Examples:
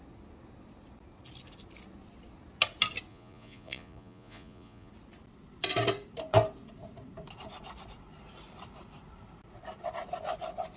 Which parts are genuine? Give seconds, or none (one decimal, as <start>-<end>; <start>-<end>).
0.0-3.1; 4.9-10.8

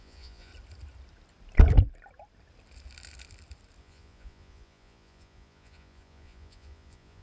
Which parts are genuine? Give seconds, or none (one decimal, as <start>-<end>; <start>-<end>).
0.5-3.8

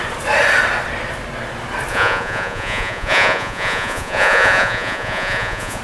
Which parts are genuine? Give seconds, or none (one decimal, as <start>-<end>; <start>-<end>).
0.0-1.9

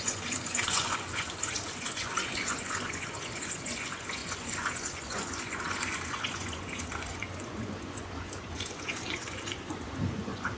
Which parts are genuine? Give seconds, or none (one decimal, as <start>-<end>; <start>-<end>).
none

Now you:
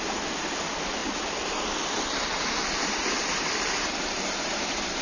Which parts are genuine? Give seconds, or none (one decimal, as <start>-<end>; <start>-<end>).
0.0-5.0

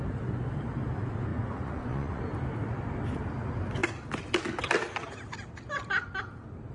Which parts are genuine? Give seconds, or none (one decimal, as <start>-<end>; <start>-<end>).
0.0-1.3; 2.2-6.7

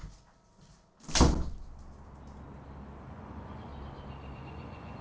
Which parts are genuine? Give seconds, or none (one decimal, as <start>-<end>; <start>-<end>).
0.0-3.0; 3.7-4.4